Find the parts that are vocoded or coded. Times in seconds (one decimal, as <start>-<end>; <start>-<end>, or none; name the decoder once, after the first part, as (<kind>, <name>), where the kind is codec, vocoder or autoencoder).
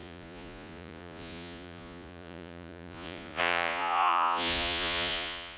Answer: 0.0-5.6 (vocoder, Vocos)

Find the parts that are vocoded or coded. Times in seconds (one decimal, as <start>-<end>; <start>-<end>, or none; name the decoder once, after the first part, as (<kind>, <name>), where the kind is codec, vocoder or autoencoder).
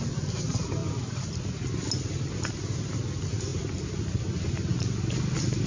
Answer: none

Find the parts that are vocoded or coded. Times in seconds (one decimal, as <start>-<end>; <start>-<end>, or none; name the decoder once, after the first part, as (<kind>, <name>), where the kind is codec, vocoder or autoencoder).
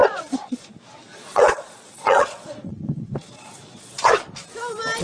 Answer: 0.0-0.7 (vocoder, Vocos); 1.1-4.1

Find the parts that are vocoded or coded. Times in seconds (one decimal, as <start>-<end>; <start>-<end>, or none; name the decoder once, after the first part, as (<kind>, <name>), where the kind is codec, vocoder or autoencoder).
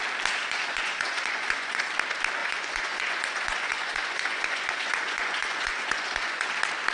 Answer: 0.4-1.9 (vocoder, Vocos); 2.4-6.5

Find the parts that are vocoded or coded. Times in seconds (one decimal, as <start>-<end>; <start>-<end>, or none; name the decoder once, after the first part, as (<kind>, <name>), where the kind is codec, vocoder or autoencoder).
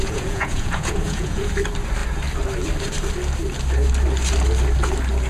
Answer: 0.0-1.5 (vocoder, Vocos)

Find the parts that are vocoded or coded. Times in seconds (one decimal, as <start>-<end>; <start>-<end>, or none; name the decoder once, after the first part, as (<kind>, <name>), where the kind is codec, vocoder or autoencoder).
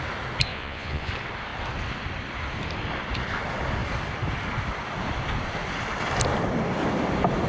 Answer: 0.5-1.1 (vocoder, Vocos)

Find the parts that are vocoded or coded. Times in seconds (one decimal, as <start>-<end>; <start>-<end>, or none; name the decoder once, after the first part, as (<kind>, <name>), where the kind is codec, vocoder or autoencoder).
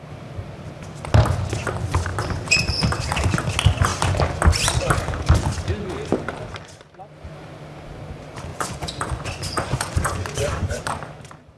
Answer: 8.5-10.8 (vocoder, Vocos)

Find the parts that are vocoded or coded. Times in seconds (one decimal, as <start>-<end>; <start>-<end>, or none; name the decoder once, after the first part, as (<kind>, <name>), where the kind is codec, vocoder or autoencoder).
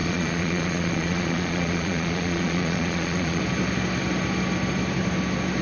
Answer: 0.0-3.4 (vocoder, Vocos)